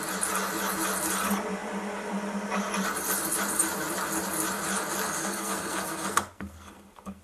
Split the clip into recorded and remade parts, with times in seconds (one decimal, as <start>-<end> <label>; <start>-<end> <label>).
0.0-5.2 recorded; 5.2-7.2 remade